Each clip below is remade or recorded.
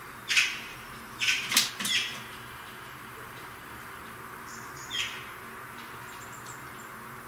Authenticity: remade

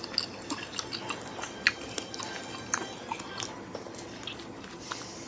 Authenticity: recorded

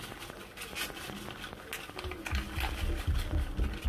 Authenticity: recorded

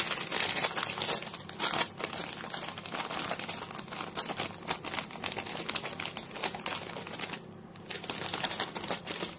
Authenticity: recorded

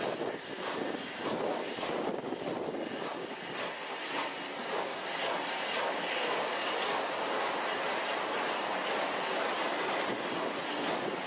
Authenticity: recorded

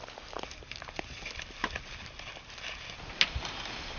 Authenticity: recorded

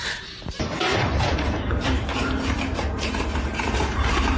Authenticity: remade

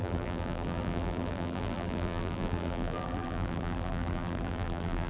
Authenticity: remade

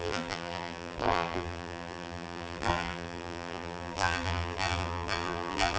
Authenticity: remade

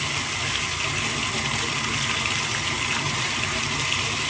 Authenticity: recorded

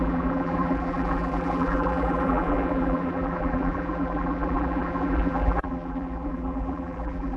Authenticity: remade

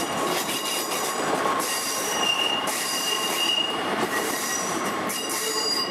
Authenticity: remade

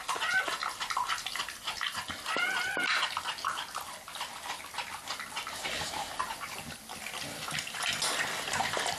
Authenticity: recorded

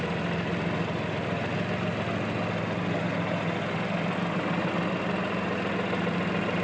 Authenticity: recorded